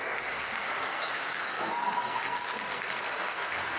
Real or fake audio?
fake